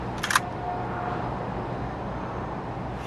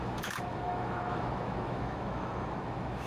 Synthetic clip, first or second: second